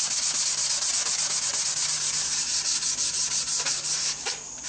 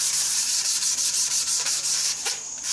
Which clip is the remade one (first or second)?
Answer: second